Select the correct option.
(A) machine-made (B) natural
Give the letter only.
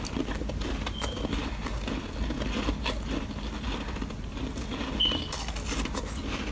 B